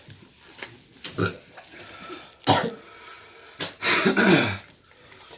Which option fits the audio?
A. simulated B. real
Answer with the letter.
B